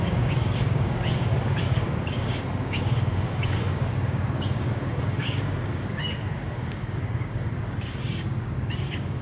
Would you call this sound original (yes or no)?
no